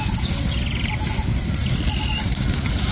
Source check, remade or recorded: recorded